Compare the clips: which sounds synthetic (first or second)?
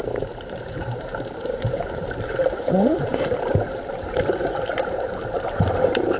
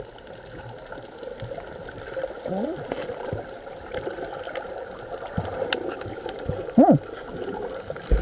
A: first